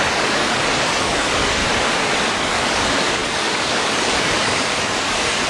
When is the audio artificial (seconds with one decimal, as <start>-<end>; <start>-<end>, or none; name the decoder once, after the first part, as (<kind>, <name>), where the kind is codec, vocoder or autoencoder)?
0.0-1.6 (codec, DAC); 2.4-5.5